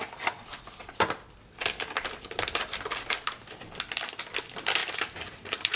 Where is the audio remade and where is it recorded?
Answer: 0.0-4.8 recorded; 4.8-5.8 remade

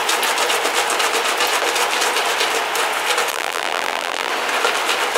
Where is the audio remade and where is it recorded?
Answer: 0.0-3.3 recorded; 3.3-4.3 remade; 4.3-5.2 recorded

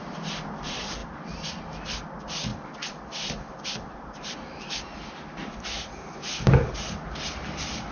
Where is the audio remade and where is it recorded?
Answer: 0.0-2.5 recorded; 2.5-6.7 remade; 6.7-7.9 recorded

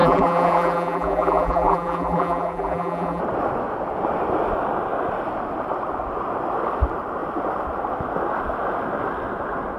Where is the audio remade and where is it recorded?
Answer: 0.0-3.2 remade; 3.2-9.8 recorded

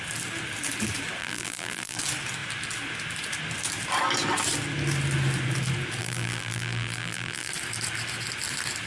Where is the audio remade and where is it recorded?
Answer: 0.0-1.2 recorded; 1.2-2.0 remade; 2.0-6.0 recorded; 6.0-7.5 remade; 7.5-8.9 recorded

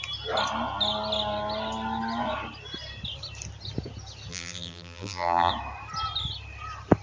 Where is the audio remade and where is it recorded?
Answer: 0.0-4.3 recorded; 4.3-5.5 remade; 5.5-7.0 recorded